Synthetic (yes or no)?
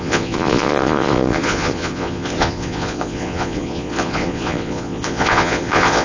yes